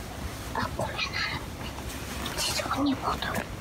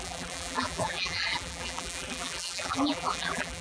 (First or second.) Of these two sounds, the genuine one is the first